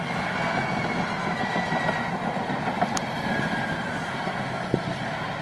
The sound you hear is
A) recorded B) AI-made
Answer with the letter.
A